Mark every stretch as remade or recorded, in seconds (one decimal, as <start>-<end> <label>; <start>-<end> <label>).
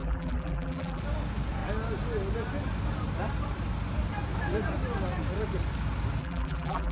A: 0.0-1.0 remade; 1.0-6.2 recorded; 6.2-6.9 remade